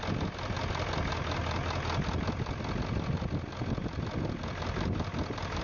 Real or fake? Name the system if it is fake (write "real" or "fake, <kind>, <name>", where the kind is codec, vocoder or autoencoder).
real